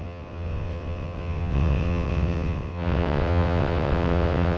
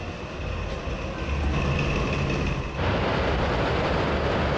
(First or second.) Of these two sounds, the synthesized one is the first